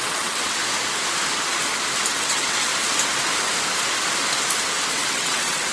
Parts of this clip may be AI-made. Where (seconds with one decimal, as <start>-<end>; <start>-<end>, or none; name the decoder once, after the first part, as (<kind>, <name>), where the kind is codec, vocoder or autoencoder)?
0.0-0.6 (vocoder, WaveNeXt); 2.1-2.7; 4.9-5.7